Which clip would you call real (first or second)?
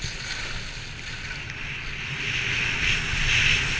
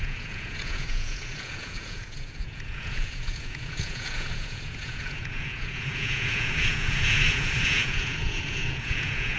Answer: first